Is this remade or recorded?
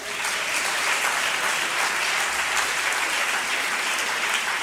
recorded